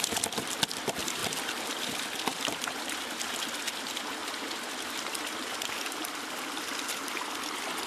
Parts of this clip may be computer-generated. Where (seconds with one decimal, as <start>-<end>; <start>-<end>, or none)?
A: 1.2-1.9; 2.3-4.0